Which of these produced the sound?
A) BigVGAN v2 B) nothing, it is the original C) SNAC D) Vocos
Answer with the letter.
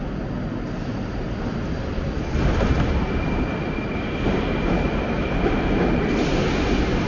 B